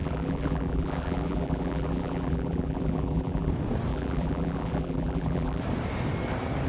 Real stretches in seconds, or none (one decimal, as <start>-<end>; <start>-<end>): 3.5-3.9; 5.6-6.7